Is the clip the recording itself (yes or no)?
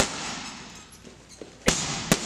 yes